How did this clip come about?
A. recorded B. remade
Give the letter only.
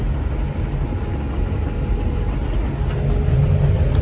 A